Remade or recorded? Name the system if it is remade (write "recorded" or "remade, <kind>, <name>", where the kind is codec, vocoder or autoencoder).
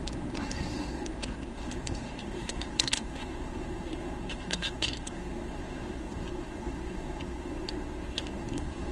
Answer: remade, codec, SNAC